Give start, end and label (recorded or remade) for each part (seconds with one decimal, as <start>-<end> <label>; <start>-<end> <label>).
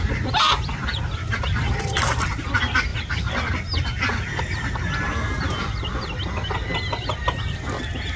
0.0-8.2 recorded